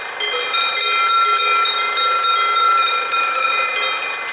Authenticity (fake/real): real